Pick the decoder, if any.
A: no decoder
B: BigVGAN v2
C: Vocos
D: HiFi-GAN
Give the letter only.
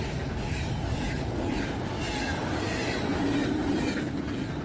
A